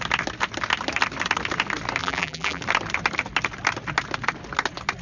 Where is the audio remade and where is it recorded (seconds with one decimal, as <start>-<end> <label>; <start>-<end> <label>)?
0.0-2.0 recorded; 2.0-2.6 remade; 2.6-5.0 recorded